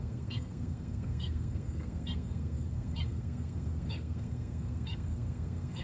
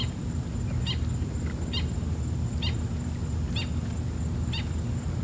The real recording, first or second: second